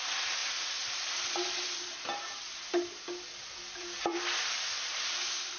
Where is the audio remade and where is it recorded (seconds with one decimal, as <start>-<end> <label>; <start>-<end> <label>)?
0.0-5.6 recorded

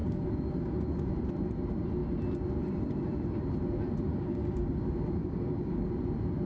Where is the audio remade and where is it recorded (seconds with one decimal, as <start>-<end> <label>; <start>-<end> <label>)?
0.0-1.1 remade; 1.1-4.1 recorded; 4.1-4.8 remade; 4.8-5.2 recorded; 5.2-5.9 remade; 5.9-6.5 recorded

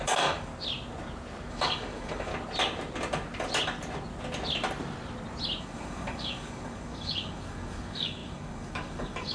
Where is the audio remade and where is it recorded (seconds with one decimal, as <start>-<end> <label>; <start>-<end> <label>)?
0.0-0.5 remade; 0.5-1.5 recorded; 1.5-2.3 remade; 2.3-5.6 recorded; 5.6-9.3 remade

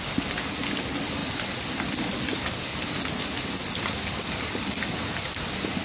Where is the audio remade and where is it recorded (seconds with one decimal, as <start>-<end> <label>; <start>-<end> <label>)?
0.0-5.8 recorded

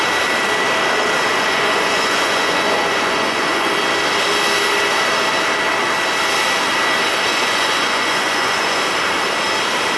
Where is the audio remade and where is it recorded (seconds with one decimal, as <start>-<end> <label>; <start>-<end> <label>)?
0.0-1.3 recorded; 1.3-3.7 remade; 3.7-7.3 recorded; 7.3-8.8 remade; 8.8-10.0 recorded

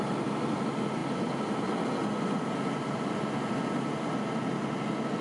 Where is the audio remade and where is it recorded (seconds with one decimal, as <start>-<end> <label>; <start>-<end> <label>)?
0.0-5.2 recorded